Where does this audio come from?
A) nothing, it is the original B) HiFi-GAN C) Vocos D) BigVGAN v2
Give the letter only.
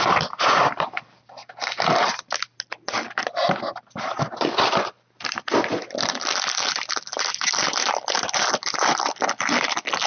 A